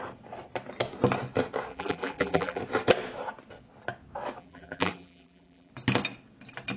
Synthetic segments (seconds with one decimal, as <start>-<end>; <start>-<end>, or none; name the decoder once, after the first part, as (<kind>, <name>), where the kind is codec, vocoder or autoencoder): 1.7-2.6 (vocoder, BigVGAN v2); 4.4-5.7